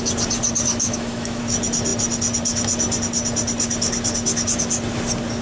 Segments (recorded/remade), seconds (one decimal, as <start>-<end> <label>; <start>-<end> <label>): 0.0-0.7 recorded; 0.7-1.4 remade; 1.4-5.4 recorded